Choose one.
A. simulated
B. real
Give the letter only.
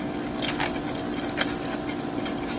B